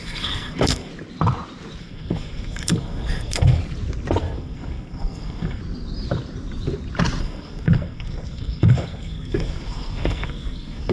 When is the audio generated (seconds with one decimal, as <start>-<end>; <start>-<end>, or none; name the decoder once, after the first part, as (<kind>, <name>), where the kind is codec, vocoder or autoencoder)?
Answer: 0.0-0.9 (codec, SNAC); 1.8-3.6; 4.2-5.6; 7.2-10.9